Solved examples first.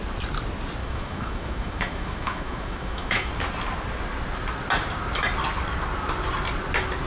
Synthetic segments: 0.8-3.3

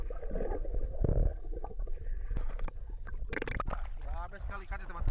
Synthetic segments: none

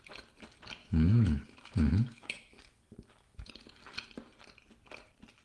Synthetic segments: 0.8-3.5

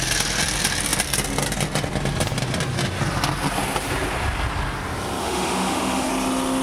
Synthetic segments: 5.2-6.1

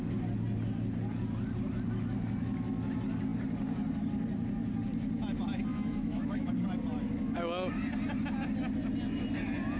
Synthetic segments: 5.7-6.5

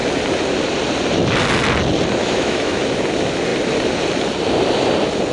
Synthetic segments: 2.2-2.8

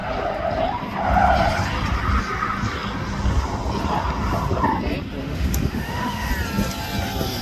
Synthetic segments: 5.2-6.3